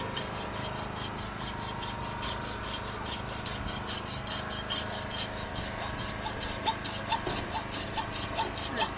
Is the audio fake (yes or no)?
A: no